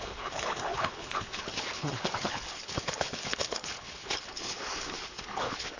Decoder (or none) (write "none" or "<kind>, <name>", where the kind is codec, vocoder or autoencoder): codec, HILCodec